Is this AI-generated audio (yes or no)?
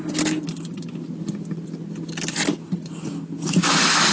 no